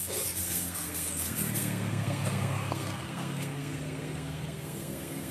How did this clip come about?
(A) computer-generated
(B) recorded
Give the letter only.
A